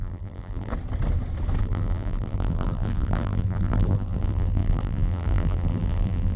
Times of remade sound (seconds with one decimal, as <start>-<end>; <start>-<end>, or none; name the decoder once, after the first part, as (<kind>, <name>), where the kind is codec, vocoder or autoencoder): 0.0-0.7 (vocoder, BigVGAN v2); 1.6-6.4